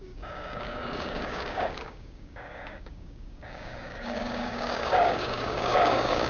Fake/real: fake